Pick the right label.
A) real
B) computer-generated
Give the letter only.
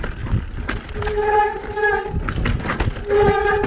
A